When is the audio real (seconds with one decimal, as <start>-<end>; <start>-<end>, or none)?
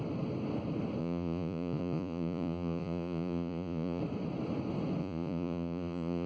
0.0-1.0; 4.0-5.0